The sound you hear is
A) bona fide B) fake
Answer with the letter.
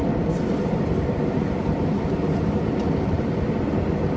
A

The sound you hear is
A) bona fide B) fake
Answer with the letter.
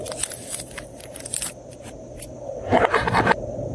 B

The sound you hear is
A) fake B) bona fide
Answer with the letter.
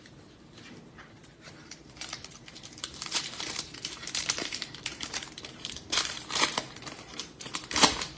A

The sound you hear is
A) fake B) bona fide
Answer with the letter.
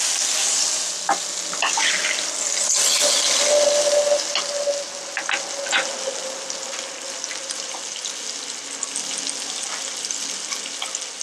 B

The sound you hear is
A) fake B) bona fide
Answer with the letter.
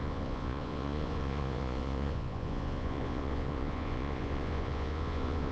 A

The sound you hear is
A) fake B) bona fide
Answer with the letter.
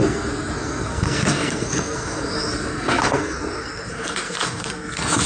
A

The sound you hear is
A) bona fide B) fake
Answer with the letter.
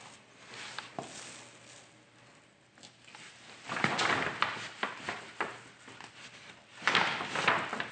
A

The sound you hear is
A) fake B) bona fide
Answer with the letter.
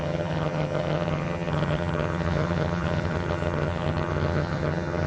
A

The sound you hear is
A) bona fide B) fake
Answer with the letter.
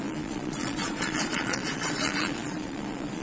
B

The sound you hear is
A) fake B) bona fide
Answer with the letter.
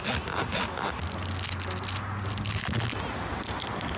B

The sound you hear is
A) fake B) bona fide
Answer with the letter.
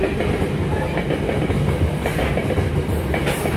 B